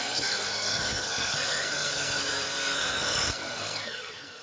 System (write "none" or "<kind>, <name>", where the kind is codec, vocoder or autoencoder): codec, SNAC